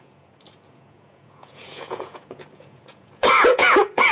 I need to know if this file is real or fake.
fake